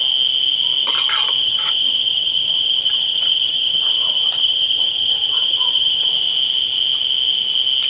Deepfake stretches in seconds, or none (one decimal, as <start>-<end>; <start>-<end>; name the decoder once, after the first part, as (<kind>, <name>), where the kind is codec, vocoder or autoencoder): 1.4-6.1 (vocoder, HiFi-GAN)